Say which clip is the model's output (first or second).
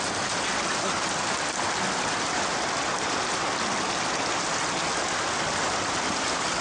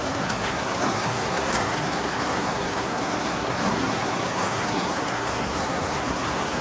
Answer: second